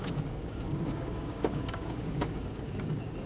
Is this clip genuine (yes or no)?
no